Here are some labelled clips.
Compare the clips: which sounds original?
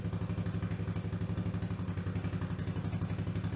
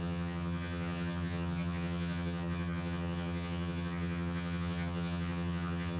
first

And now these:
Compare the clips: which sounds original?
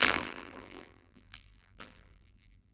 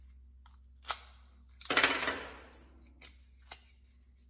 second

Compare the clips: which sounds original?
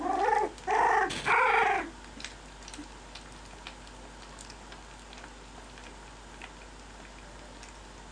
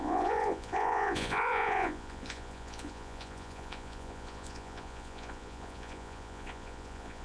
first